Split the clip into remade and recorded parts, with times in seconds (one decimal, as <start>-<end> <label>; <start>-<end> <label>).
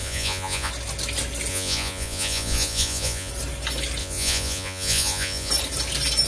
0.0-0.7 remade; 0.7-1.5 recorded; 1.5-3.3 remade; 3.3-4.0 recorded; 4.0-5.5 remade; 5.5-6.3 recorded